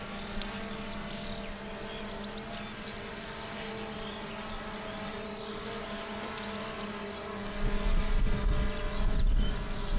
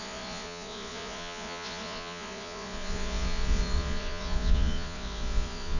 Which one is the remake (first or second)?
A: second